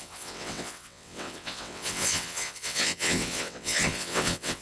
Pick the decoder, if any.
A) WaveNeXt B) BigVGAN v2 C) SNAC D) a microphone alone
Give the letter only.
A